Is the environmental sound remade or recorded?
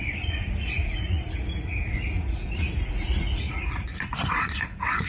remade